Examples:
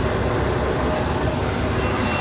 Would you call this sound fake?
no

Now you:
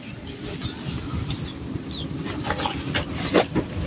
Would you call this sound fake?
no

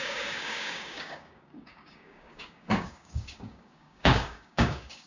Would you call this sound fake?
yes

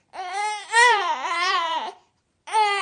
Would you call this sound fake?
yes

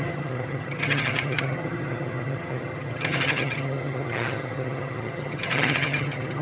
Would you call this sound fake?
yes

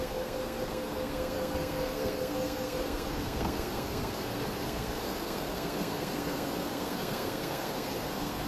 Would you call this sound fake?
yes